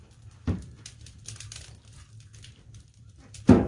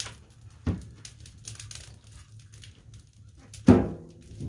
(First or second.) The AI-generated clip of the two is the first